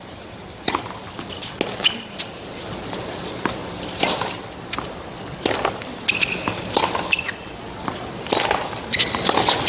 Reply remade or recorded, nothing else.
recorded